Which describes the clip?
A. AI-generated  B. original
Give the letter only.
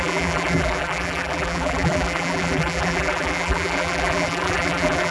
A